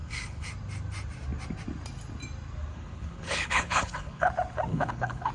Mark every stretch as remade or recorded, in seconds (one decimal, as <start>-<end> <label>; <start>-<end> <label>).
0.0-0.5 remade; 0.5-2.7 recorded; 2.7-4.3 remade; 4.3-4.7 recorded; 4.7-5.3 remade